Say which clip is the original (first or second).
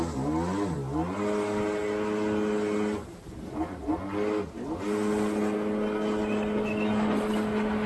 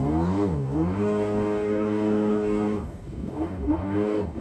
first